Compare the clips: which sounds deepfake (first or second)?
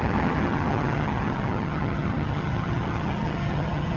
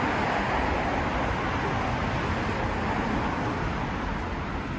first